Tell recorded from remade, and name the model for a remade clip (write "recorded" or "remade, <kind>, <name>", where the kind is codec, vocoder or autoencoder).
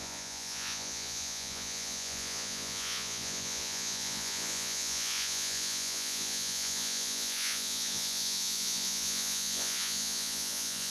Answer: remade, vocoder, Vocos